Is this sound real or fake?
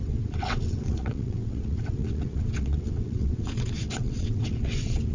fake